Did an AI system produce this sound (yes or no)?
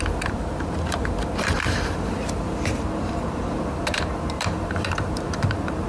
yes